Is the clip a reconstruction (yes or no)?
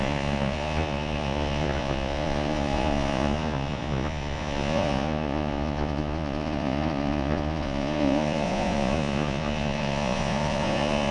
yes